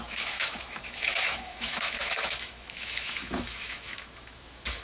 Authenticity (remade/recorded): remade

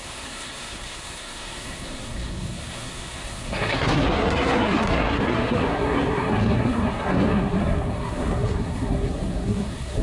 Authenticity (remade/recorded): remade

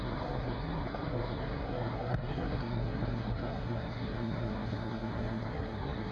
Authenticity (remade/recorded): remade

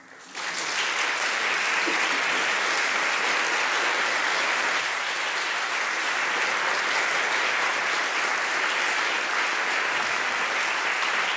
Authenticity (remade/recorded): recorded